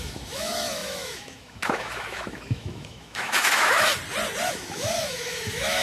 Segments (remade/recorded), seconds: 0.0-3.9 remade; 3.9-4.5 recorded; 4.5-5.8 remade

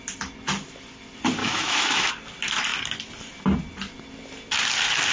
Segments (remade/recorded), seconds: 0.0-1.4 recorded; 1.4-2.1 remade; 2.1-5.1 recorded

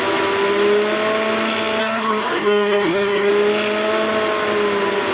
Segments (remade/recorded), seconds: 0.0-1.8 recorded; 1.8-3.3 remade; 3.3-5.1 recorded